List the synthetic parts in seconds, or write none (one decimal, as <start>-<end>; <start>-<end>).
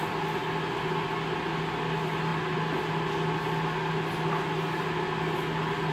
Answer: none